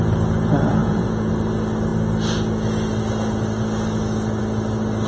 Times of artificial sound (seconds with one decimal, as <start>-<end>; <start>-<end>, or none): 0.8-1.3